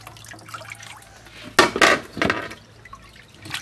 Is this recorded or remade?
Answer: recorded